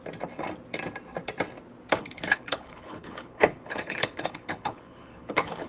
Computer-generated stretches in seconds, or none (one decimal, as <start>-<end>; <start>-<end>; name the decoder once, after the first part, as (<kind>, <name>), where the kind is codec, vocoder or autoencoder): 2.0-5.7 (codec, HILCodec)